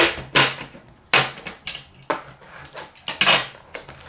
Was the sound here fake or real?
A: real